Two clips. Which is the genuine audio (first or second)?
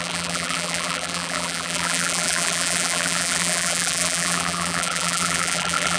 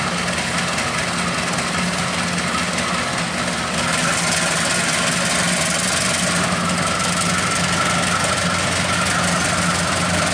second